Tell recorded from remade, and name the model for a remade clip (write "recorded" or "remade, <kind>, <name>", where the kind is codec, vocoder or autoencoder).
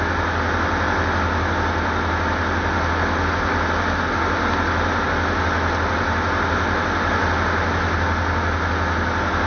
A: recorded